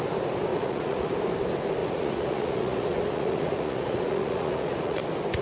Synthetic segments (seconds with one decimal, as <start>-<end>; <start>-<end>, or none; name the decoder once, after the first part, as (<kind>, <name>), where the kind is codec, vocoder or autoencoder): 0.5-1.1 (vocoder, Vocos); 1.8-5.0